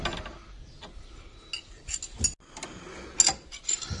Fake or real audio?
real